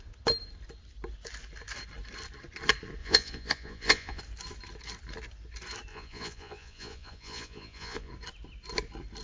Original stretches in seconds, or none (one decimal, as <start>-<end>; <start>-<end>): 0.0-3.0; 4.2-5.9; 8.1-9.2